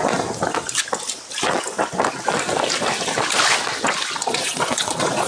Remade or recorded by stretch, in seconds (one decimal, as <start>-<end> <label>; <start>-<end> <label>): 0.0-4.2 recorded; 4.2-5.3 remade

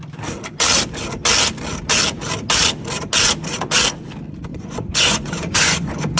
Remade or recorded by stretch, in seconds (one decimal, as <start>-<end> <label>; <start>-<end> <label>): 0.0-4.5 recorded; 4.5-6.2 remade

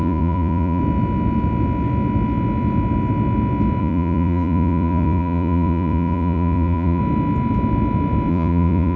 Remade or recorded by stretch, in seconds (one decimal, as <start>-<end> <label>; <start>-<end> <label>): 0.0-0.8 remade; 0.8-3.8 recorded; 3.8-7.0 remade; 7.0-8.3 recorded; 8.3-9.0 remade

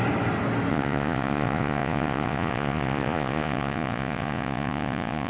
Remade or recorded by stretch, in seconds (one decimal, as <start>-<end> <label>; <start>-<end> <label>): 0.0-0.7 recorded; 0.7-5.3 remade